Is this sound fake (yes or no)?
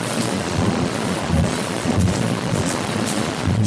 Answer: yes